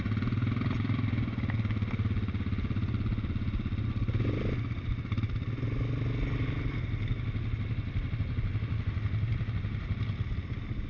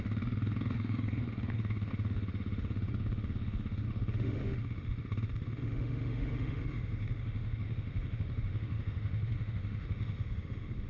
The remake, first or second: second